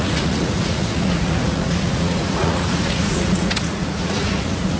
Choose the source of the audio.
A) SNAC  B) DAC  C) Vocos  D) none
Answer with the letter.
C